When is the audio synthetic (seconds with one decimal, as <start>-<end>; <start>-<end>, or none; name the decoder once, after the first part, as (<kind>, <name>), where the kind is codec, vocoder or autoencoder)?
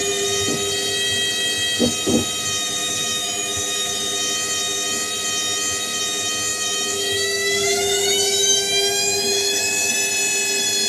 2.8-3.9 (autoencoder, DAC-VAE); 6.5-9.9